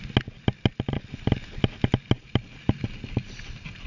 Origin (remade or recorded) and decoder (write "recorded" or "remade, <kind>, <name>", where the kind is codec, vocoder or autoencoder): recorded